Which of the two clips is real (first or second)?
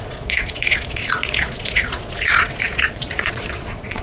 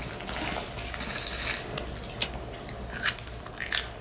second